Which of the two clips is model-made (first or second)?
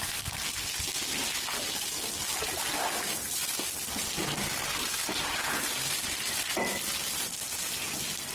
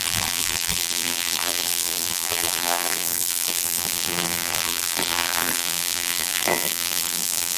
second